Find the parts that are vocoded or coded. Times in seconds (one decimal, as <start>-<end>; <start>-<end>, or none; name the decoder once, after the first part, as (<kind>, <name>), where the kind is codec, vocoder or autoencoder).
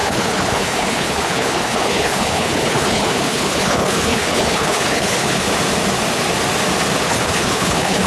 0.0-5.5 (codec, HILCodec); 7.0-8.1